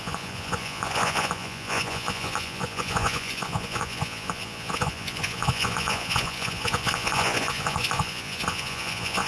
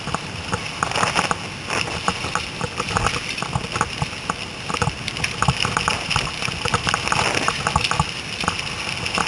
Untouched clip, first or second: second